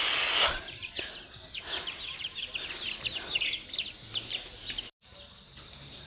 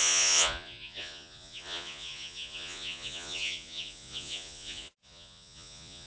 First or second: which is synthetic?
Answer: second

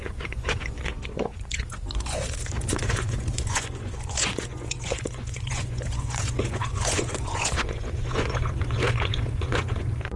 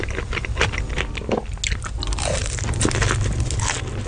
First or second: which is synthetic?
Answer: first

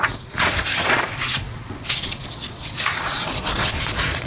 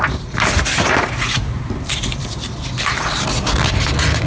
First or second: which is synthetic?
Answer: first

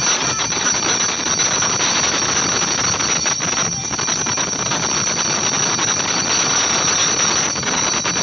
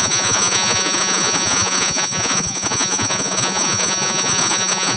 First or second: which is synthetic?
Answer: second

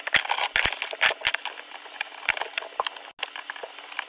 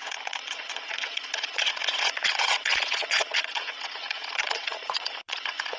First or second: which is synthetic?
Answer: second